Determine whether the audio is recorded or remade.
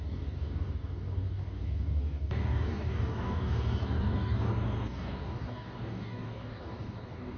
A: remade